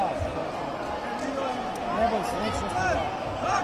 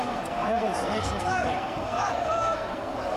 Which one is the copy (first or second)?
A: second